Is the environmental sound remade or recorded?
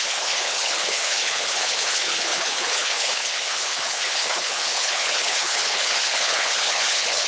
remade